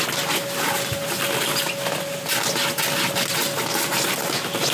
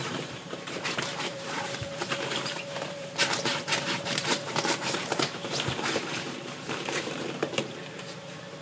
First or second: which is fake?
second